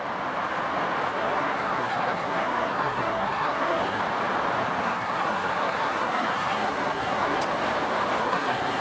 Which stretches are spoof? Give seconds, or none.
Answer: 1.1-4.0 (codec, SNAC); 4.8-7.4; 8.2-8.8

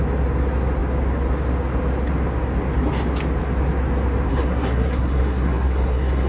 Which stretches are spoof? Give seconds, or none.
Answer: 4.3-6.3 (codec, SNAC)